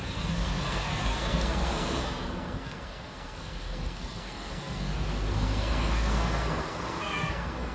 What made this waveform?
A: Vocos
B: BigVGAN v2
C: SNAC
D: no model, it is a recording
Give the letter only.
C